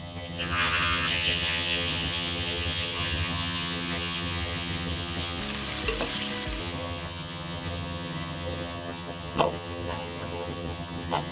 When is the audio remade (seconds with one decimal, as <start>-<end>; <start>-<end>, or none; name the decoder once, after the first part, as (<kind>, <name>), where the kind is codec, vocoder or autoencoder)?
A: 0.0-5.4 (vocoder, HiFi-GAN); 6.6-11.3